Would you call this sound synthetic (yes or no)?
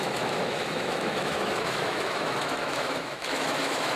yes